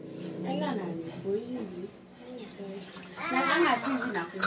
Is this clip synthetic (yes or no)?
no